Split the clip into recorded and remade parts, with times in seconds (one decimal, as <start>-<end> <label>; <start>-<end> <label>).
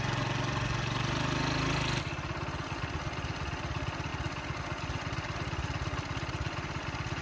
0.0-7.2 recorded